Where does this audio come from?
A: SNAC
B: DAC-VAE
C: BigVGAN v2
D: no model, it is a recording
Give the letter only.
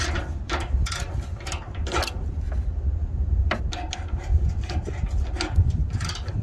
D